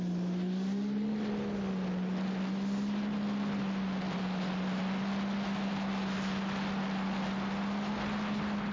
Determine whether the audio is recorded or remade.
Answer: recorded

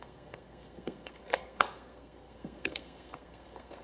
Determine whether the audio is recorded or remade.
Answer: remade